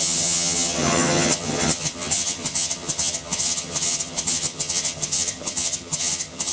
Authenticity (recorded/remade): remade